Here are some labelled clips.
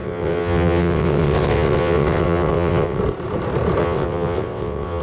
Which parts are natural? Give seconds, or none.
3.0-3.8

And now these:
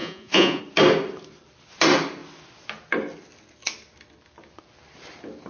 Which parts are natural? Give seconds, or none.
0.6-5.5

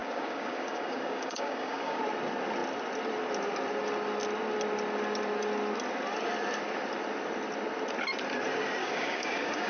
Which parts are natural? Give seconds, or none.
2.0-8.8

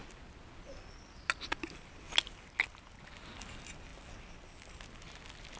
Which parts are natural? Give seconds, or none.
0.0-5.6

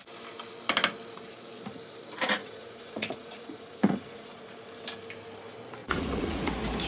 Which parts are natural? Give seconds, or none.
0.0-2.4; 4.3-5.8; 6.5-6.9

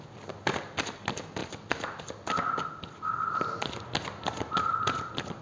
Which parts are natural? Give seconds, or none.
0.0-5.4

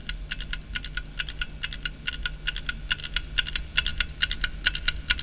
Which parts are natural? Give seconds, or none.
0.0-5.2

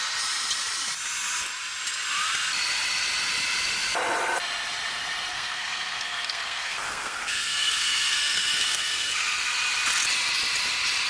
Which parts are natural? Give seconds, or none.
0.0-5.3; 9.5-11.1